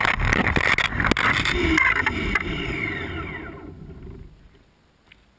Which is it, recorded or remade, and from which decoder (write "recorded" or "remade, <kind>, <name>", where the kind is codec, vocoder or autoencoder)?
recorded